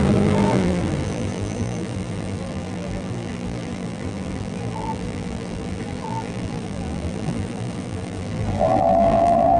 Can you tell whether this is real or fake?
fake